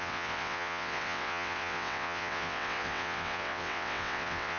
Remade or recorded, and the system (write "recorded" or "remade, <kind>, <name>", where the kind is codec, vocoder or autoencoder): remade, vocoder, WaveNeXt